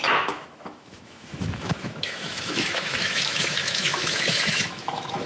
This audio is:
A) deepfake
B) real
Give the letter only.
A